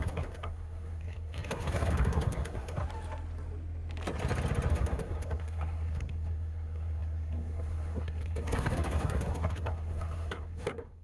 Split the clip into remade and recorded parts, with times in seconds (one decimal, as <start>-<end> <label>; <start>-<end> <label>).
0.0-2.8 remade; 2.8-4.7 recorded; 4.7-11.0 remade